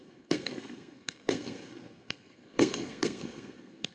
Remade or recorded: remade